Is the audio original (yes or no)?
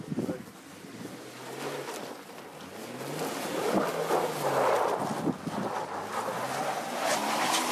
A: yes